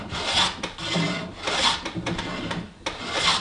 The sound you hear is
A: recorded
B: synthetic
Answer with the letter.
A